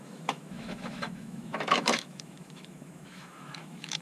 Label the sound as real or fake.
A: fake